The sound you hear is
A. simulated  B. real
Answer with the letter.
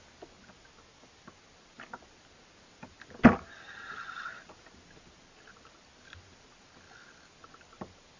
B